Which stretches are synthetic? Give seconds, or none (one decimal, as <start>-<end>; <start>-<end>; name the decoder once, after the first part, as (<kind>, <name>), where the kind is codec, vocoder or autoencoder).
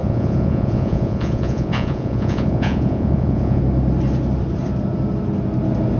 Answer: 0.0-3.6 (vocoder, Vocos)